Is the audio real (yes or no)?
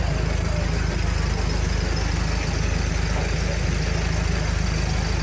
yes